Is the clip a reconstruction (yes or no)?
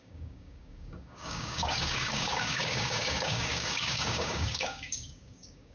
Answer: yes